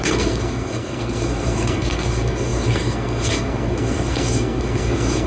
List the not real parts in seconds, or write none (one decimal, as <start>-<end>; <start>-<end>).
0.0-5.3